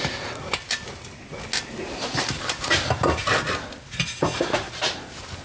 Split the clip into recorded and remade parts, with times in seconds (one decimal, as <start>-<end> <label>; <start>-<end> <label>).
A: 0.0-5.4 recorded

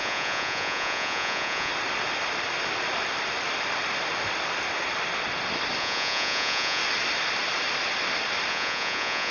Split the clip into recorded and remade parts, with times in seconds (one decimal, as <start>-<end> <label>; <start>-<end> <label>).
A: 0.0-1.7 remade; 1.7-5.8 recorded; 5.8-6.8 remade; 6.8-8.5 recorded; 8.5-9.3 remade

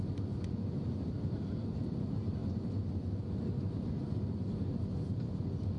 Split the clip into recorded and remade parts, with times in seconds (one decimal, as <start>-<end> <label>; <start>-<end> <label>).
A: 0.0-5.8 recorded